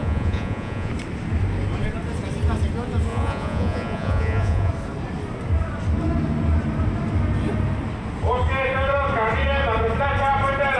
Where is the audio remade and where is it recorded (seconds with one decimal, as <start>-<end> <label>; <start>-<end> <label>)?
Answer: 0.0-0.9 remade; 0.9-3.1 recorded; 3.1-4.7 remade; 4.7-10.8 recorded